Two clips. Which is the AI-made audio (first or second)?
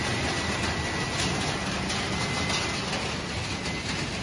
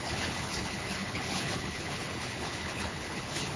second